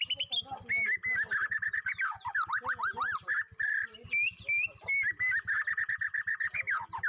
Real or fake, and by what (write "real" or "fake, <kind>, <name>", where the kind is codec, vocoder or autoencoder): real